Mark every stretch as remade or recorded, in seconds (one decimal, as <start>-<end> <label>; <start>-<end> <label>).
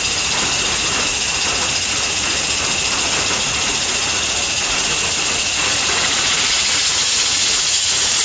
0.0-8.2 remade